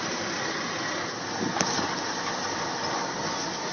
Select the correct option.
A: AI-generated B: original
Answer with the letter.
B